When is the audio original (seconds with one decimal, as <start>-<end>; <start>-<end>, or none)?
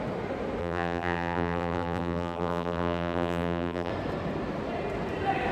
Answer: 0.0-0.6; 3.9-5.5